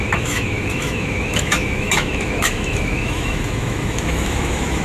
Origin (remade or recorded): remade